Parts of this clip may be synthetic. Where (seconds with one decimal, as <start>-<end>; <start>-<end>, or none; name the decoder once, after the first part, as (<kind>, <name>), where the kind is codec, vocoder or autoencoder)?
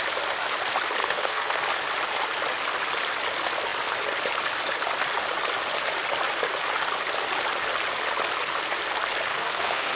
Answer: 1.0-1.6 (codec, SNAC); 9.3-10.0